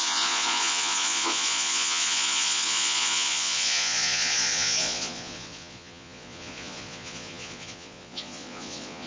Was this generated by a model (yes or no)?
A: yes